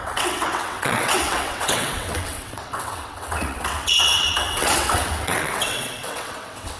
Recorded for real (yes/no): no